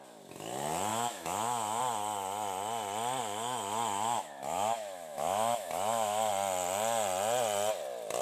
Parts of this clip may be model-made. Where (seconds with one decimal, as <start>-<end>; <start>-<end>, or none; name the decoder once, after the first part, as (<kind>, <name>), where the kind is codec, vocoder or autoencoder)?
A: 0.9-1.8 (autoencoder, DAC-VAE); 3.2-6.3